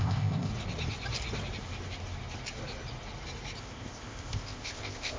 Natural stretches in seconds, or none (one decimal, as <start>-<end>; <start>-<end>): 0.5-3.6